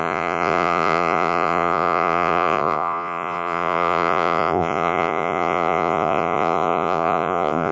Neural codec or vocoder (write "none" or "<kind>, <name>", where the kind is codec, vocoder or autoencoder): vocoder, Vocos